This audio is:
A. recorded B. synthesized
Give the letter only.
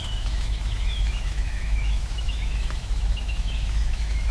B